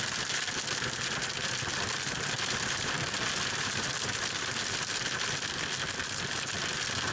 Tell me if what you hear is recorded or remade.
remade